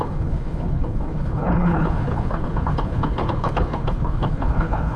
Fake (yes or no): yes